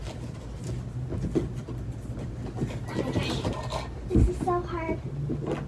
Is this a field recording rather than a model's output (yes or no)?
yes